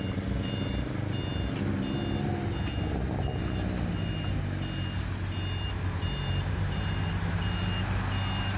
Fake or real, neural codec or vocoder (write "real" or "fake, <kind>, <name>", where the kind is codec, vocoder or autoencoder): real